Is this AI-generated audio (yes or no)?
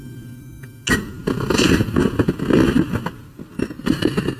no